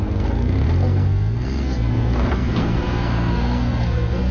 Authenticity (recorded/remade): remade